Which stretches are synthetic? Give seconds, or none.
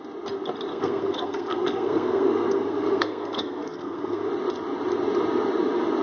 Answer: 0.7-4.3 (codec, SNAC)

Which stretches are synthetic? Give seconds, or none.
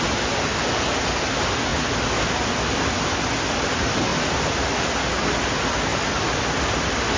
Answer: none